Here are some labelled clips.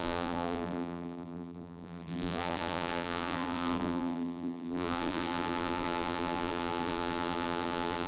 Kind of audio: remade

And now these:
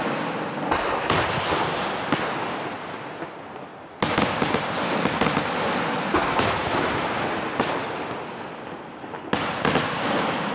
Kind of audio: recorded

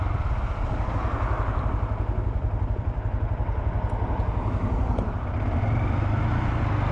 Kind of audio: recorded